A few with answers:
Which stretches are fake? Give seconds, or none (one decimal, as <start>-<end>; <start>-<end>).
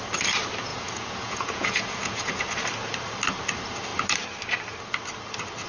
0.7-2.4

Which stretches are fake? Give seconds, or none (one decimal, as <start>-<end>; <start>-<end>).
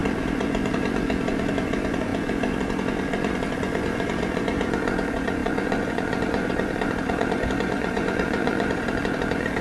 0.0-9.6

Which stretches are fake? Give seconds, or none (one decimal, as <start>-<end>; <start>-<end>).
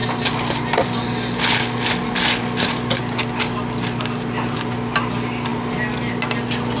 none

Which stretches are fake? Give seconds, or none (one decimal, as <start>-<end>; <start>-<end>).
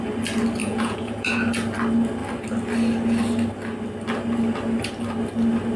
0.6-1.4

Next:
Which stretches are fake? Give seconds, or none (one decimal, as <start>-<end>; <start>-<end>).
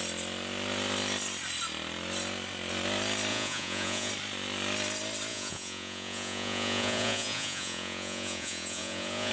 3.3-4.1; 5.3-9.3